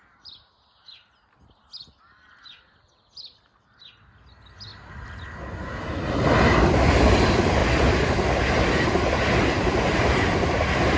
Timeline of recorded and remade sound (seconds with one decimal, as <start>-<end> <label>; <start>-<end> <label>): 0.0-11.0 recorded